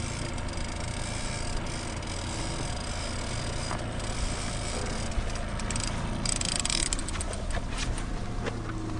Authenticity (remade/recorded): recorded